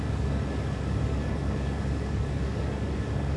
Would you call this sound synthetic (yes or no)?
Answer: yes